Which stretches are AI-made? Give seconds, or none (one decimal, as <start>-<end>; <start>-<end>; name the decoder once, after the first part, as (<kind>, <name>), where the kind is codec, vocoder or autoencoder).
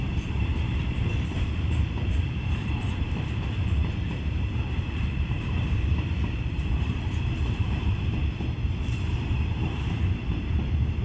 0.0-11.0 (vocoder, BigVGAN v2)